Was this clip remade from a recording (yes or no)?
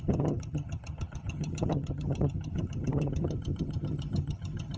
yes